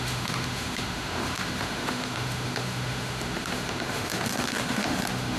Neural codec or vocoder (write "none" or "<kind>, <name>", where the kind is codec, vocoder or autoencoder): autoencoder, DAC-VAE